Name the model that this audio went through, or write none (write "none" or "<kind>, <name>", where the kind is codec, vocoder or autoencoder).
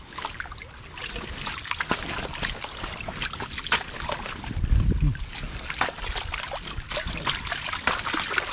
none